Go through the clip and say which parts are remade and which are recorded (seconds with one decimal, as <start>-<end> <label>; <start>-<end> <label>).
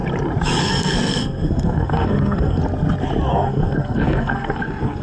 0.0-0.6 recorded; 0.6-2.6 remade; 2.6-3.3 recorded; 3.3-5.0 remade